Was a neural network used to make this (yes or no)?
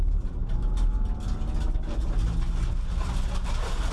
no